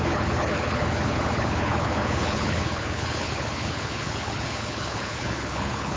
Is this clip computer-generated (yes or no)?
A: yes